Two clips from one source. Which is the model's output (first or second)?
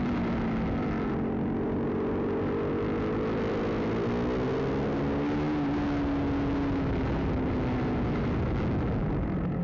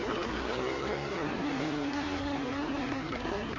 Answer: second